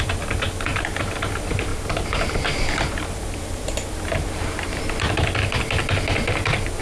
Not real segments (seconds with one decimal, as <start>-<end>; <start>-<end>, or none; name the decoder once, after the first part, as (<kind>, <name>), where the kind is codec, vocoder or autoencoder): 0.7-1.2 (vocoder, BigVGAN v2); 1.7-4.8